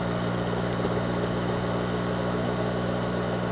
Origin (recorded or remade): recorded